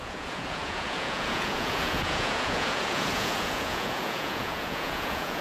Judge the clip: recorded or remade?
remade